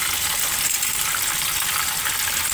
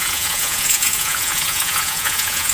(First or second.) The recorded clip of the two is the first